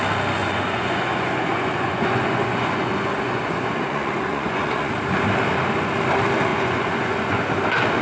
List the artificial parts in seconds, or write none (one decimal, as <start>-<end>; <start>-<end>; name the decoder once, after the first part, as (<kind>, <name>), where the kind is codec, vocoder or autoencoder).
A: 0.4-4.9 (vocoder, Vocos); 6.5-7.4